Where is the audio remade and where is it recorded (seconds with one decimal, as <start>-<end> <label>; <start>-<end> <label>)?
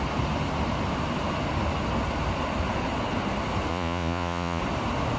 0.0-3.7 recorded; 3.7-4.6 remade; 4.6-5.2 recorded